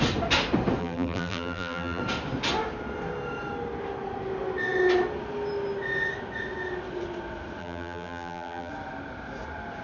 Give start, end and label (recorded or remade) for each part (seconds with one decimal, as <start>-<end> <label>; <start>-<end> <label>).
0.0-0.8 recorded; 0.8-2.0 remade; 2.0-7.6 recorded; 7.6-8.7 remade; 8.7-9.8 recorded